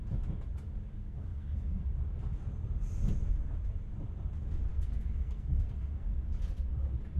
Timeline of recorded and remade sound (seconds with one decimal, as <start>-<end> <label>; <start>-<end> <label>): 0.0-1.0 recorded; 1.0-1.9 remade; 1.9-4.7 recorded; 4.7-6.3 remade; 6.3-7.2 recorded